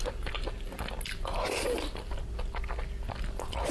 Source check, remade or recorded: recorded